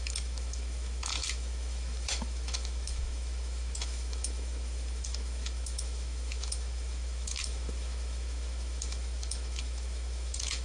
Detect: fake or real fake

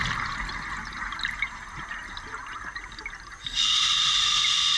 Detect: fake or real real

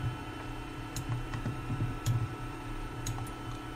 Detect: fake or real fake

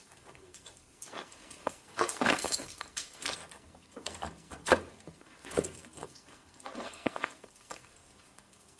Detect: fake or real fake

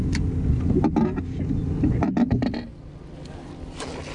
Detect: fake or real real